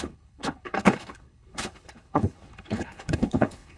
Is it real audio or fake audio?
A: fake